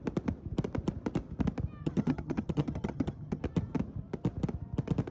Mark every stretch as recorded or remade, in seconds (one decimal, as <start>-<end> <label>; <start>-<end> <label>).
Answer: 0.0-1.8 recorded; 1.8-3.4 remade; 3.4-5.1 recorded